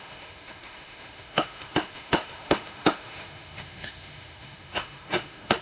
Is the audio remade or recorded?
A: remade